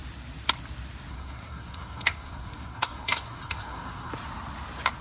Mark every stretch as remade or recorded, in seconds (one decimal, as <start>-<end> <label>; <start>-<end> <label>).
0.0-1.1 recorded; 1.1-4.1 remade; 4.1-5.0 recorded